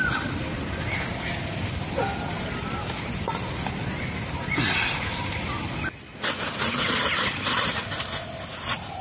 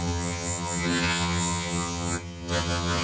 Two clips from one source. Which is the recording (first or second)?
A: first